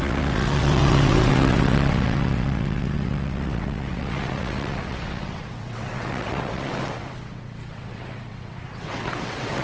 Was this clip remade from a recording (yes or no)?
yes